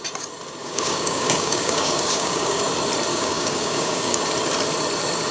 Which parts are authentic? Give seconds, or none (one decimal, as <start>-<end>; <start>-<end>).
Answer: 0.0-0.6; 2.6-3.1; 4.2-5.3